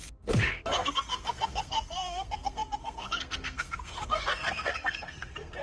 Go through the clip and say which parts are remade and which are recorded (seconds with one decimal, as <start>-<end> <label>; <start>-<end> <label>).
0.0-5.6 remade

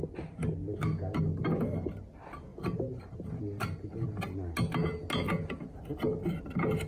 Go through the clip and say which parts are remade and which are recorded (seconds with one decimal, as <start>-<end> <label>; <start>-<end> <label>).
0.0-6.9 recorded